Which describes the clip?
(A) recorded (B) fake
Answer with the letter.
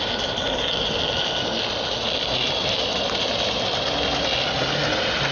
A